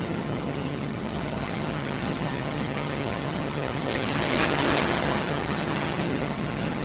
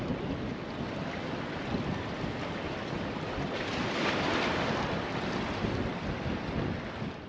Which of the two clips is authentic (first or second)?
second